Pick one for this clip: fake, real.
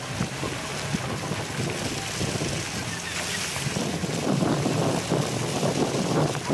real